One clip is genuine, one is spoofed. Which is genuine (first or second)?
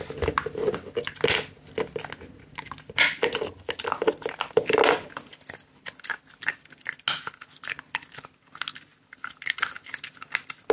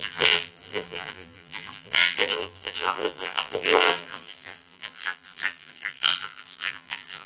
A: first